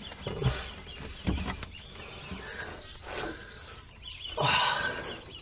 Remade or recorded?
recorded